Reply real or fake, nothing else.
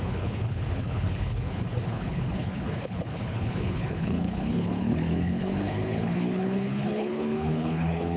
fake